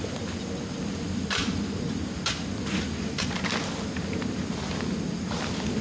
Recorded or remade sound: recorded